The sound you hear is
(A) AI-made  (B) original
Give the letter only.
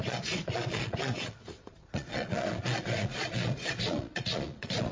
A